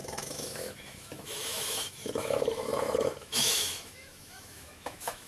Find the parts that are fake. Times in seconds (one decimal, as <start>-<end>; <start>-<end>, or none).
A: 0.0-5.3